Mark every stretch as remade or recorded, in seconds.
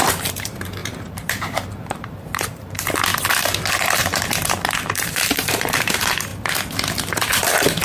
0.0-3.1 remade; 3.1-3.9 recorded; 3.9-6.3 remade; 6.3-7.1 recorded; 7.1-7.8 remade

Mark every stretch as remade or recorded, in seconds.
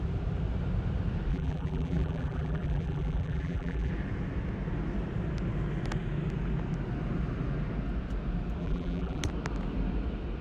0.0-1.3 recorded; 1.3-3.9 remade; 3.9-8.6 recorded; 8.6-9.2 remade; 9.2-10.4 recorded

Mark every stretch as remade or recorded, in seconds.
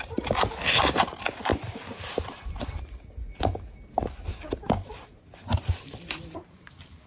0.0-1.5 recorded; 1.5-2.8 remade; 2.8-4.3 recorded; 4.3-7.1 remade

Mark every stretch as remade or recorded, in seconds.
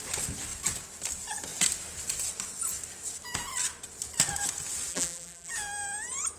0.0-4.9 recorded; 4.9-5.5 remade; 5.5-6.4 recorded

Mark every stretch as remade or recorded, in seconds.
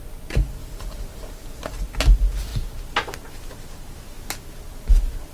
0.0-0.6 recorded; 0.6-1.8 remade; 1.8-5.3 recorded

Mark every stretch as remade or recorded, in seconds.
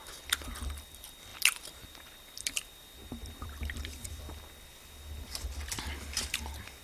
0.0-1.3 recorded; 1.3-4.2 remade; 4.2-6.8 recorded